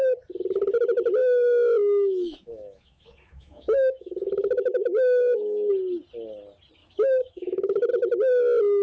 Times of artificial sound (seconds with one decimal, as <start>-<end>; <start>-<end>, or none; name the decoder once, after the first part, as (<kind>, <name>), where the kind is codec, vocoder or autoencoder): 1.2-5.7 (autoencoder, DAC-VAE); 6.8-7.9